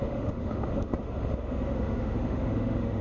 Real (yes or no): no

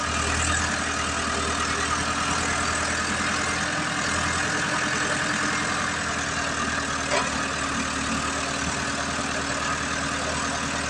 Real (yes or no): yes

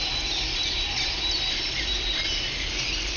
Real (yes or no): yes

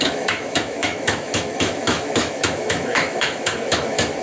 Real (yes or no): no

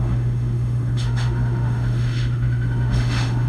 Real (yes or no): no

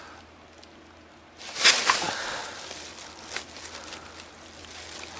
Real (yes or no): yes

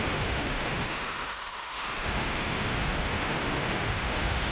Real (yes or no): no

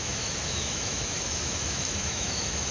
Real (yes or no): no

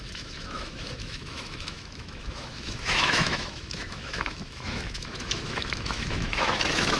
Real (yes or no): no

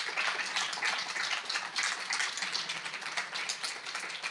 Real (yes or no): yes